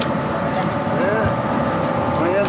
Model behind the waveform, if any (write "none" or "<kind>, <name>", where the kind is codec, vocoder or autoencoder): none